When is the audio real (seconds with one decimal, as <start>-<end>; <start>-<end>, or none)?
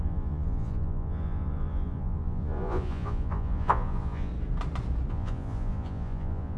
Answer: 4.3-5.1